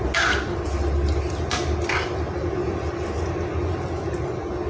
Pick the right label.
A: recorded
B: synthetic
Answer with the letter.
A